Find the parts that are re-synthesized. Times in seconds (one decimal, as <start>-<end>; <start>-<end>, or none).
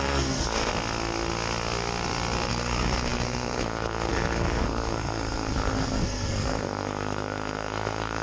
0.0-0.7; 2.5-8.2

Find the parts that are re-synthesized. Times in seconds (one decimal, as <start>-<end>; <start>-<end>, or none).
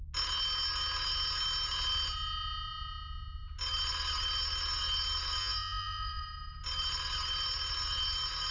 5.4-6.2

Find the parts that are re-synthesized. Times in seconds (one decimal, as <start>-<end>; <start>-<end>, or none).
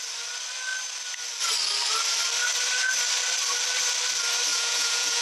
4.5-5.2